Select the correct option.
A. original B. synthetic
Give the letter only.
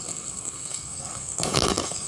B